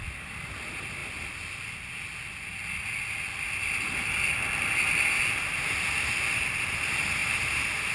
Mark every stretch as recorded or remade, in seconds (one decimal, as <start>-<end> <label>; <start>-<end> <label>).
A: 0.0-7.2 recorded; 7.2-7.9 remade